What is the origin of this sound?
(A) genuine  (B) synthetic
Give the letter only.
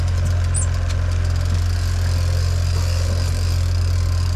A